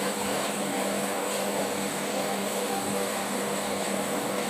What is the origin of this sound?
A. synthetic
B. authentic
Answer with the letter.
A